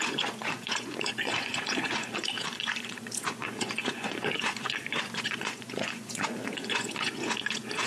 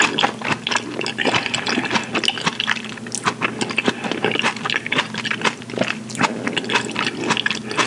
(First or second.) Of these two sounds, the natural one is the second